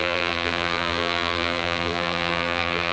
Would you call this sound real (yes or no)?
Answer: no